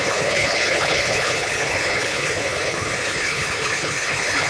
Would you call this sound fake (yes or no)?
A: yes